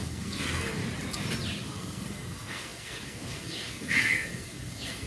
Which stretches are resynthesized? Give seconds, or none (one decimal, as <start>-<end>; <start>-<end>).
0.0-0.8; 1.7-5.1